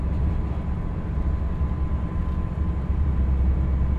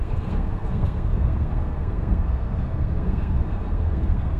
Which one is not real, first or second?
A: second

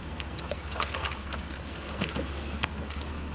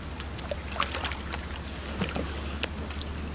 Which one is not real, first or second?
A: first